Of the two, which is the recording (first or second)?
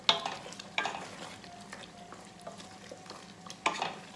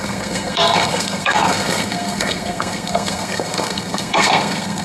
first